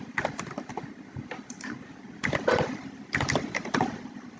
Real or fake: real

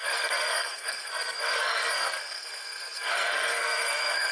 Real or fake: fake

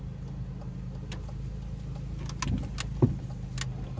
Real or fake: real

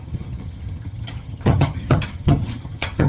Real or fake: fake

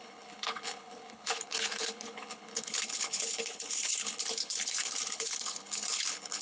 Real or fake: fake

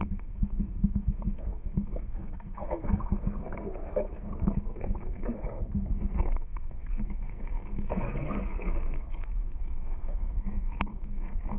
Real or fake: fake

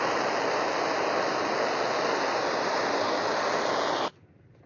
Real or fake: real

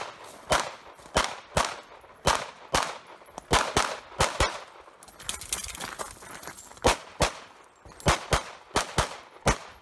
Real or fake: real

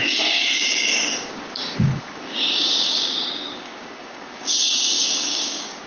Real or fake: fake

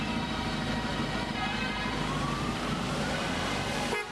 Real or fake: fake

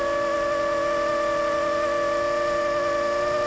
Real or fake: real